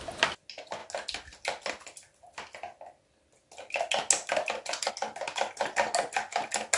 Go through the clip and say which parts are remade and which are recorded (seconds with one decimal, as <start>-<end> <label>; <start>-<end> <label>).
0.0-6.8 recorded